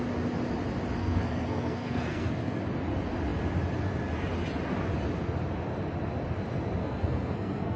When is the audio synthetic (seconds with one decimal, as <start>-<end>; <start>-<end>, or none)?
1.0-2.6; 6.8-7.8